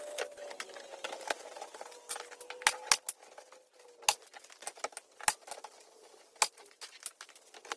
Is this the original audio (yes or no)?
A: yes